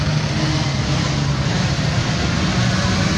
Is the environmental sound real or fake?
real